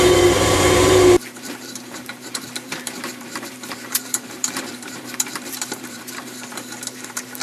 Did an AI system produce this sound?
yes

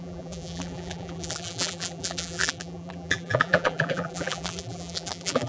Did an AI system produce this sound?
yes